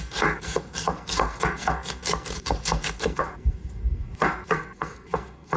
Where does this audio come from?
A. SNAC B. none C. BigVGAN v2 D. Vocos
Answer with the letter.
A